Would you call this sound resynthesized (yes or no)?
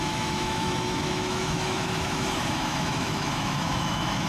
yes